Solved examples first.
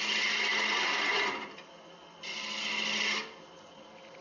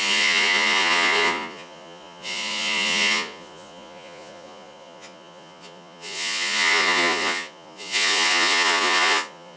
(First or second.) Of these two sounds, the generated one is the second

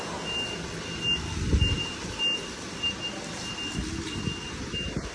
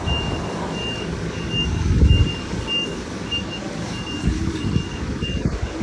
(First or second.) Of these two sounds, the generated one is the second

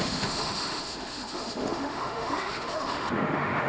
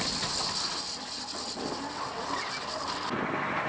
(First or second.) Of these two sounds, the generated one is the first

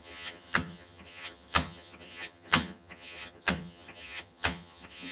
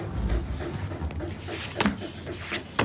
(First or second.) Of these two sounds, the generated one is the first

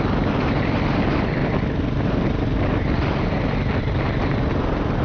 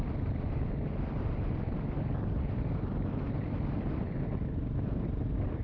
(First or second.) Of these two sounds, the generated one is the second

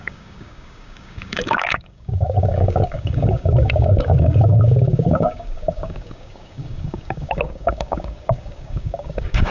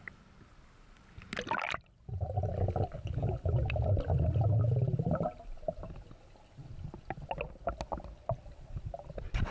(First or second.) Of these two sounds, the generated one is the first